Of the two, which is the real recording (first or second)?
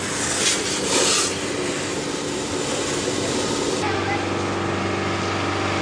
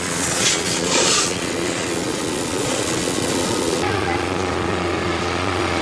first